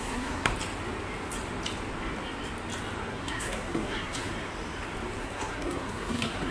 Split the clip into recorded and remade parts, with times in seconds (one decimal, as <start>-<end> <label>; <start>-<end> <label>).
0.0-0.5 remade; 0.5-3.0 recorded; 3.0-4.3 remade; 4.3-5.2 recorded; 5.2-6.5 remade